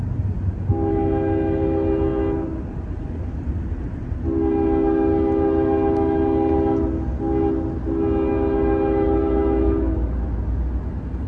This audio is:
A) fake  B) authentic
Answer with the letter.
B